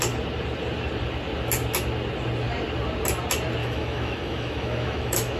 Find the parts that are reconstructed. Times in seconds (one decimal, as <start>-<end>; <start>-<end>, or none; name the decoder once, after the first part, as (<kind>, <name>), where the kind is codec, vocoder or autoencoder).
3.6-5.4 (autoencoder, DAC-VAE)